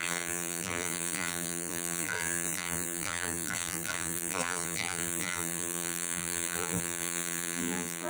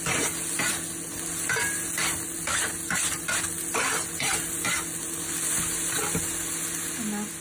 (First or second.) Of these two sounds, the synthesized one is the first